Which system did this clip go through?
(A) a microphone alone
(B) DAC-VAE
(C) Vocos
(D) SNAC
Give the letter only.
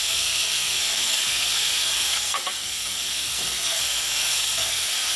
D